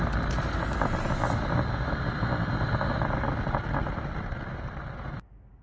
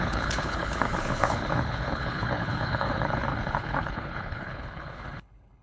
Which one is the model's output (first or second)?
second